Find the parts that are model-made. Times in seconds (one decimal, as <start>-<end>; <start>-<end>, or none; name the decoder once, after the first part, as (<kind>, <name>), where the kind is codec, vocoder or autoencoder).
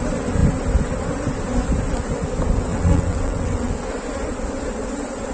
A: 2.7-3.7 (vocoder, WaveNeXt)